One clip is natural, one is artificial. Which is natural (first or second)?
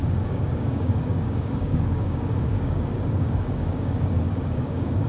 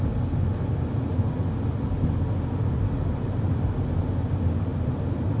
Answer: second